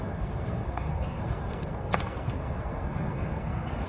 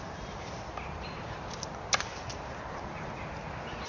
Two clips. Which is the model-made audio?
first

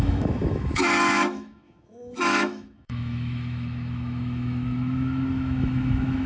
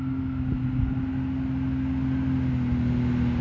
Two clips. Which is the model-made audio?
first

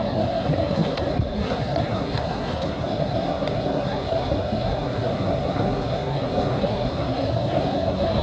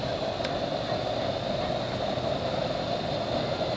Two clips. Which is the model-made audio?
first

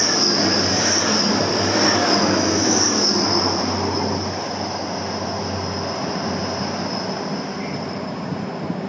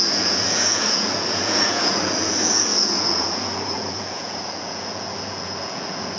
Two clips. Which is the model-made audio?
second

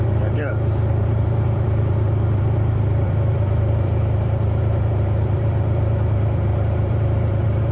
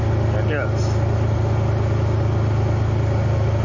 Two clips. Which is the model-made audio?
first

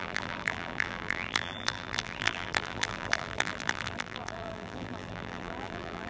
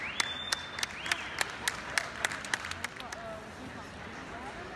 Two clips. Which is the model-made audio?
first